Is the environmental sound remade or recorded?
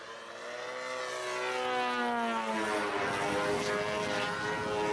recorded